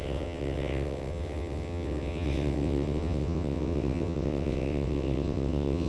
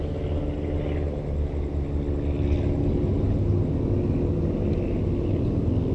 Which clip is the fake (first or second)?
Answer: first